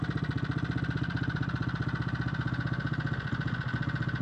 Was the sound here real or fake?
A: real